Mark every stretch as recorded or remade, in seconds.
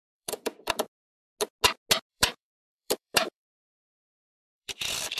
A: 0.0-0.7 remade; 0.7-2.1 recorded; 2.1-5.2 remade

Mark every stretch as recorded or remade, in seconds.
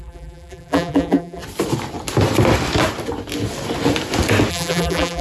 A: 0.0-1.4 remade; 1.4-4.5 recorded; 4.5-5.2 remade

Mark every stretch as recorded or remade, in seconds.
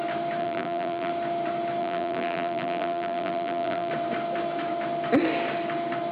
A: 0.0-0.4 recorded; 0.4-1.1 remade; 1.1-1.8 recorded; 1.8-3.9 remade; 3.9-6.1 recorded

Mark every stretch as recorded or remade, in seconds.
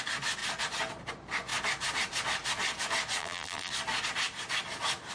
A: 0.0-3.2 recorded; 3.2-3.7 remade; 3.7-5.1 recorded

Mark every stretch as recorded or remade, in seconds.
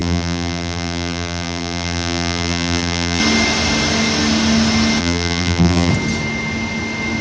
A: 0.0-3.2 remade; 3.2-5.0 recorded; 5.0-5.9 remade; 5.9-7.2 recorded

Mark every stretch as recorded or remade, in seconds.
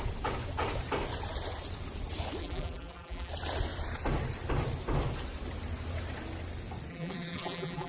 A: 0.0-2.4 recorded; 2.4-3.3 remade; 3.3-6.9 recorded; 6.9-7.9 remade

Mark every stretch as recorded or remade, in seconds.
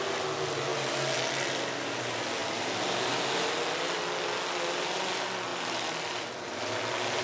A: 0.0-5.5 recorded; 5.5-7.2 remade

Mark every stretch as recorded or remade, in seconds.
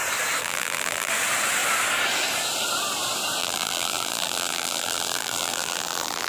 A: 0.0-0.4 recorded; 0.4-1.1 remade; 1.1-3.4 recorded; 3.4-6.3 remade